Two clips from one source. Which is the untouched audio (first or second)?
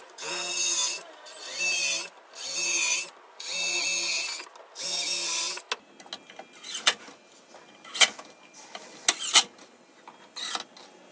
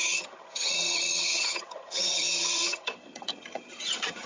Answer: first